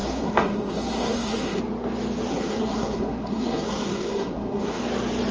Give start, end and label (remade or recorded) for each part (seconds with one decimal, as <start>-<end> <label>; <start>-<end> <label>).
0.0-1.6 remade; 1.6-2.3 recorded; 2.3-4.8 remade; 4.8-5.3 recorded